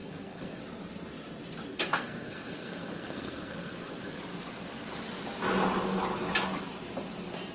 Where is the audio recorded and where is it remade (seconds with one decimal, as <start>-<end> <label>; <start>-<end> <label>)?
0.0-0.6 remade; 0.6-1.7 recorded; 1.7-3.9 remade; 3.9-7.5 recorded